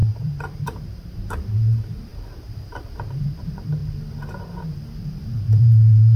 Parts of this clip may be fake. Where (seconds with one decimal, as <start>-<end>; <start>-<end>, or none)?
0.0-6.2